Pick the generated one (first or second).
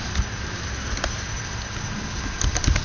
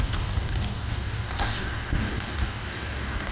second